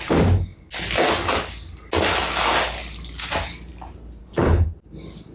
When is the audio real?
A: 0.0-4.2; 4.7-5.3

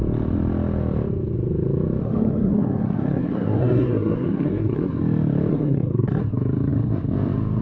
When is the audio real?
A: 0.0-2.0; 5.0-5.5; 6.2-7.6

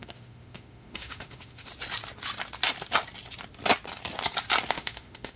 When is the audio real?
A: 1.7-4.7

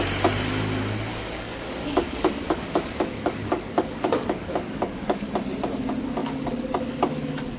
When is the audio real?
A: 0.0-1.1; 5.3-6.2

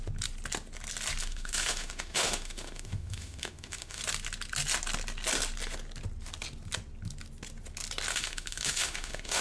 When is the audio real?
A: 0.0-1.2; 4.0-8.1

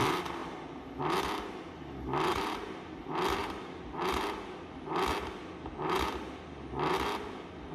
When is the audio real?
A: 0.0-2.3; 3.0-3.4; 4.0-7.7

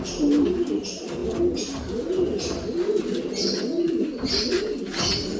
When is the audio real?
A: 0.0-5.4

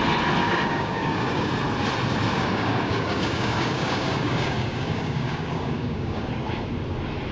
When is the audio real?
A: 0.0-0.4; 1.5-2.3; 6.3-7.3